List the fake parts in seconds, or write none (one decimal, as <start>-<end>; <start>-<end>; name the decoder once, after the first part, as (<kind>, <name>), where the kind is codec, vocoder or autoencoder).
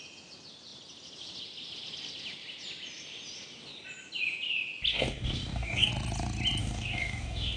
4.9-5.9 (codec, DAC); 6.6-7.6